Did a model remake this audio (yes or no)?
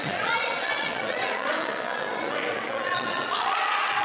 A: yes